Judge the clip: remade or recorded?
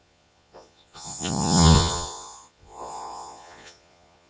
remade